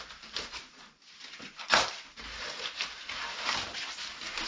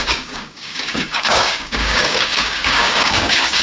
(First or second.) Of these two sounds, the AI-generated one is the second